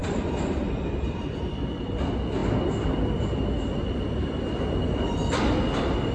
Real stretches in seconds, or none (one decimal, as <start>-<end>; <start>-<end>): 0.0-6.1